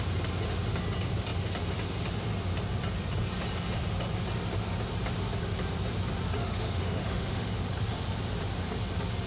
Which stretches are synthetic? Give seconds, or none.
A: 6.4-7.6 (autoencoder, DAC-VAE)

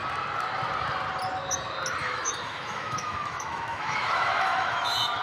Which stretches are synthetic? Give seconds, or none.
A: 2.0-5.2 (autoencoder, DAC-VAE)

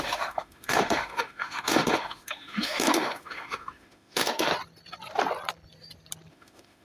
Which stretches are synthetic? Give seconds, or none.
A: 0.0-4.5 (autoencoder, DAC-VAE); 6.3-6.8